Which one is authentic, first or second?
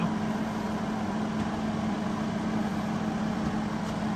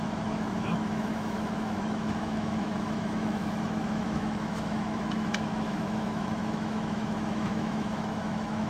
first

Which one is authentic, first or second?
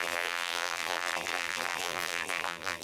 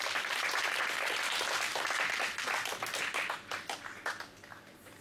second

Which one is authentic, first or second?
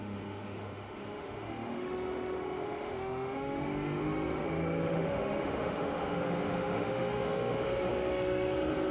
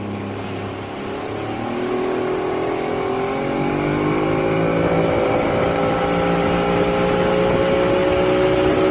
second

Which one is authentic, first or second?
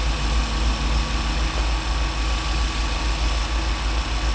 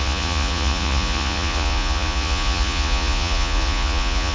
first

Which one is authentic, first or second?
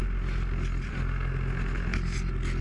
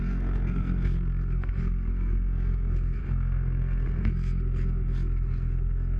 first